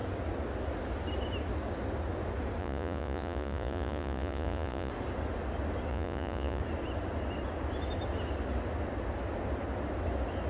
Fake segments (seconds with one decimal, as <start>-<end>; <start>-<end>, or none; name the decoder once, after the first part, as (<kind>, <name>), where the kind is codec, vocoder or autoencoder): 2.6-4.9 (vocoder, Vocos); 5.9-6.6